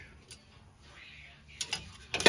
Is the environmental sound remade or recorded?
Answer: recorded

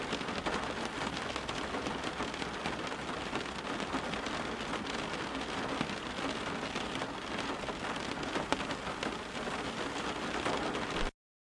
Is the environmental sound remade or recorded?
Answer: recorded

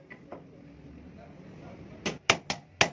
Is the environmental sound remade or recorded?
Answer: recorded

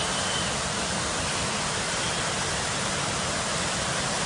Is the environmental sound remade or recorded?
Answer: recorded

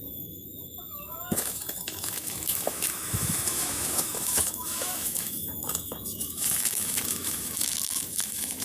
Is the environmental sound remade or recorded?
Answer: remade